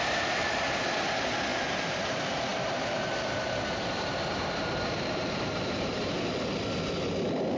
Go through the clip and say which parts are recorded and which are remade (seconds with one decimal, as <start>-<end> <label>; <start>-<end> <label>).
0.0-1.5 recorded; 1.5-2.0 remade; 2.0-2.5 recorded; 2.5-6.4 remade; 6.4-7.6 recorded